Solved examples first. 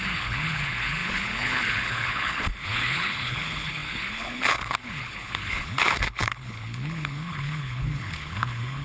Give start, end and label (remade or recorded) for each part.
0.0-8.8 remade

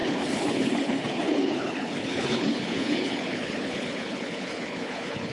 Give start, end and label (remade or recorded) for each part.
0.0-5.3 remade

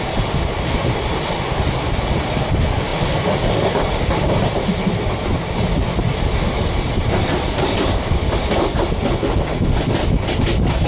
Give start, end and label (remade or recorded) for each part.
0.0-10.9 recorded

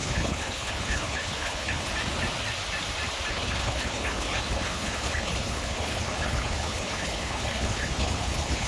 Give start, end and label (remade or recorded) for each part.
0.0-1.9 remade; 1.9-3.3 recorded; 3.3-8.7 remade

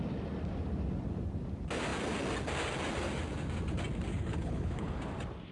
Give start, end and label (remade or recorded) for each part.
0.0-4.1 recorded; 4.1-5.0 remade; 5.0-5.5 recorded

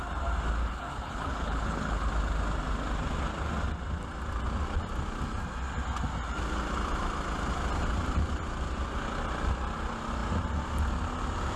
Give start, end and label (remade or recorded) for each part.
0.0-0.6 recorded; 0.6-2.1 remade; 2.1-11.6 recorded

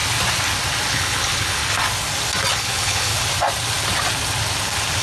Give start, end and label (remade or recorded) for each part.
0.0-0.9 recorded; 0.9-1.6 remade; 1.6-2.5 recorded; 2.5-3.1 remade; 3.1-5.0 recorded

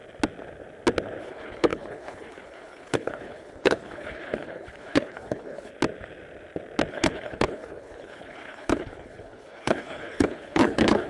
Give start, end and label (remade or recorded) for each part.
0.0-1.2 recorded; 1.2-5.7 remade; 5.7-6.9 recorded; 6.9-11.1 remade